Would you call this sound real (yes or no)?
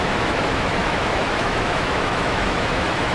no